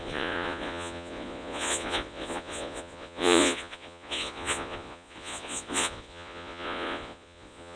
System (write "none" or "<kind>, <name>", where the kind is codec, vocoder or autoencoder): vocoder, Vocos